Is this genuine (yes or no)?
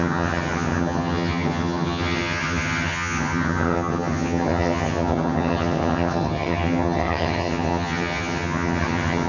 no